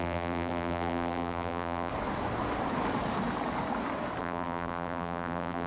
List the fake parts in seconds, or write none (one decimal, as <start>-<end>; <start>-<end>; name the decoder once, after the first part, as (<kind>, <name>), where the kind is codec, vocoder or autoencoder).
0.0-1.9 (vocoder, BigVGAN v2); 4.2-5.7